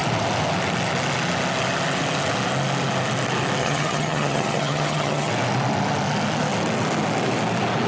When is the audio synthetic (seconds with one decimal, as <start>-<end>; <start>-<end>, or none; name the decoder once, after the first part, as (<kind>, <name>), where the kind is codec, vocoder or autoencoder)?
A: 3.6-5.3 (vocoder, HiFi-GAN)